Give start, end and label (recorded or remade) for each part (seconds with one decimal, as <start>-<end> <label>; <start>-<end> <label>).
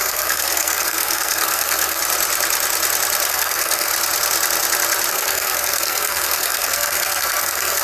0.0-2.0 remade; 2.0-3.3 recorded; 3.3-3.9 remade; 3.9-5.1 recorded; 5.1-7.8 remade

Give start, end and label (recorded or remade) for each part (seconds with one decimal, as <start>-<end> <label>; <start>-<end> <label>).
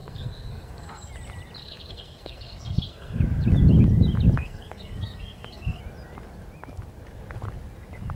0.0-1.1 remade; 1.1-1.6 recorded; 1.6-3.2 remade; 3.2-4.4 recorded; 4.4-5.8 remade; 5.8-8.2 recorded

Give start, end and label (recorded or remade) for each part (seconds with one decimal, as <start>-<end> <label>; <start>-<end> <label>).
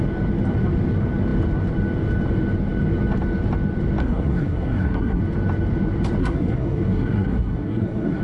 0.0-4.0 recorded; 4.0-5.2 remade; 5.2-6.2 recorded; 6.2-8.2 remade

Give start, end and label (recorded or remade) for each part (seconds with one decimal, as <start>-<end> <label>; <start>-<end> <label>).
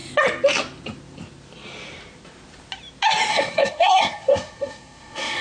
0.0-3.3 recorded; 3.3-5.4 remade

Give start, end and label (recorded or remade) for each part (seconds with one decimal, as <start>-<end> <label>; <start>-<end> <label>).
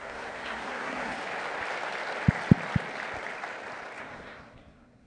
0.0-1.2 remade; 1.2-4.0 recorded; 4.0-5.1 remade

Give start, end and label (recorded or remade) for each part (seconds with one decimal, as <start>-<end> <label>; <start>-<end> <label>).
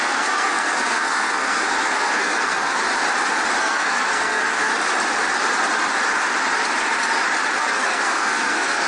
0.0-2.8 remade; 2.8-3.6 recorded; 3.6-4.7 remade; 4.7-7.6 recorded; 7.6-8.9 remade